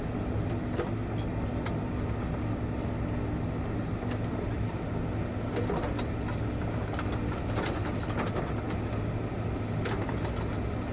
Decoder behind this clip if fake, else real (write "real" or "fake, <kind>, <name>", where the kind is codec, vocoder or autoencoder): real